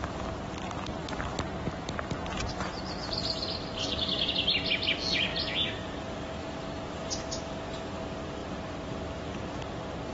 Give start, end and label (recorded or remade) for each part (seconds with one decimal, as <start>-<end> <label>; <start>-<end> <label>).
0.0-3.8 recorded; 3.8-4.3 remade; 4.3-10.1 recorded